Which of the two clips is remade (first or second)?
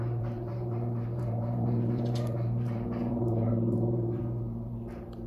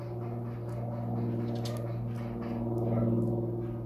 first